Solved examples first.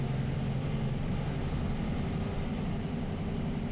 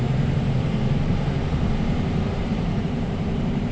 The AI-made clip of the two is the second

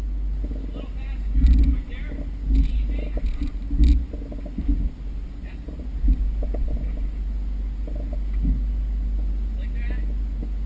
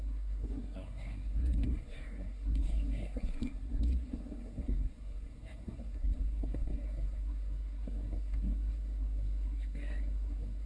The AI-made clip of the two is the second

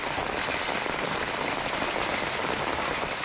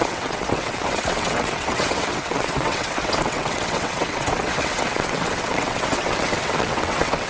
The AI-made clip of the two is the second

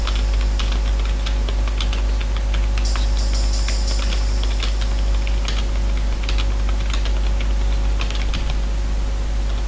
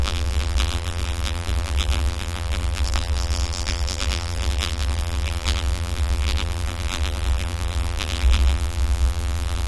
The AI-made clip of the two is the second